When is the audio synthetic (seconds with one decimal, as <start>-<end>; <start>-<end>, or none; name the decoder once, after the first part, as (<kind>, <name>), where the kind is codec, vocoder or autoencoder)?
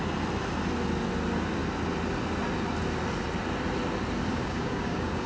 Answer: 4.3-5.3 (codec, DAC)